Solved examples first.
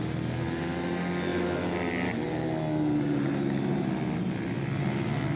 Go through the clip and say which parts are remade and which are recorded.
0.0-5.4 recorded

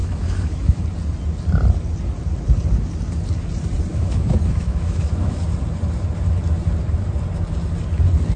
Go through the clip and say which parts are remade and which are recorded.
0.0-0.8 remade; 0.8-3.9 recorded; 3.9-5.4 remade; 5.4-8.4 recorded